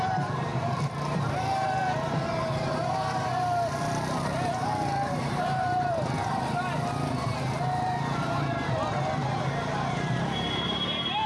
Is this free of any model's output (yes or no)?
no